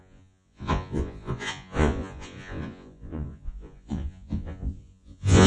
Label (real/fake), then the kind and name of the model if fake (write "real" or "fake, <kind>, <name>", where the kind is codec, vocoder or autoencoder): fake, vocoder, Vocos